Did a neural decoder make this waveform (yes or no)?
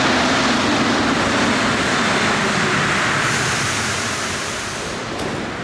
no